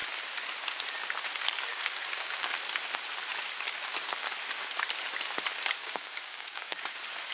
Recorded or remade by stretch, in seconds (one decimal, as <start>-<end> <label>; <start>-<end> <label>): 0.0-1.7 recorded; 1.7-2.6 remade; 2.6-5.8 recorded; 5.8-6.8 remade; 6.8-7.3 recorded

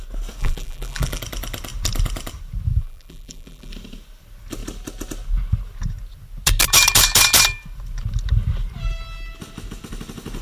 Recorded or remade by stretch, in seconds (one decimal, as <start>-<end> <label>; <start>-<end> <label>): 0.0-0.4 recorded; 0.4-1.2 remade; 1.2-2.7 recorded; 2.7-3.7 remade; 3.7-10.4 recorded

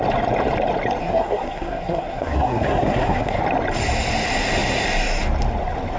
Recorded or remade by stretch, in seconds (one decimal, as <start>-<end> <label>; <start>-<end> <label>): 0.0-1.0 recorded; 1.0-3.4 remade; 3.4-6.0 recorded

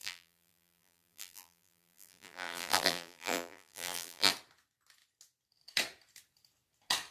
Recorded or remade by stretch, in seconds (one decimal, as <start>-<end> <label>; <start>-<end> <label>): 0.0-4.3 remade; 4.3-7.1 recorded

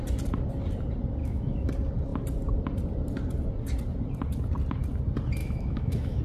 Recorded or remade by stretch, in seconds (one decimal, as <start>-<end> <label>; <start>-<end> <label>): 0.0-1.2 recorded; 1.2-1.7 remade; 1.7-5.4 recorded; 5.4-6.2 remade

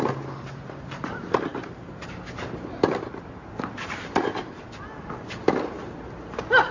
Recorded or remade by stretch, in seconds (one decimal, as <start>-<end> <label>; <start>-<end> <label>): 0.0-6.7 recorded